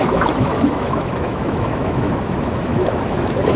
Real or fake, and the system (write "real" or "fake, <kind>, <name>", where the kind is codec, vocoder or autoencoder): fake, autoencoder, DAC-VAE